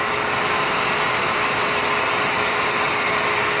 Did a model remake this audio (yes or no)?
no